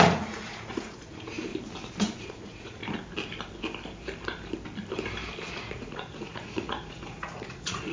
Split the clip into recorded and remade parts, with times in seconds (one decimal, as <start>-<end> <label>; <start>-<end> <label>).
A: 0.0-1.5 remade; 1.5-2.2 recorded; 2.2-2.8 remade; 2.8-5.5 recorded; 5.5-7.9 remade